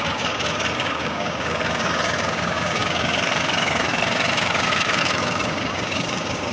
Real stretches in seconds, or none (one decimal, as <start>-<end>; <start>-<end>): none